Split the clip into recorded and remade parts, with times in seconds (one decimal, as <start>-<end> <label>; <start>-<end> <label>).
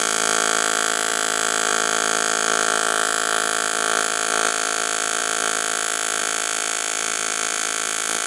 0.0-8.3 recorded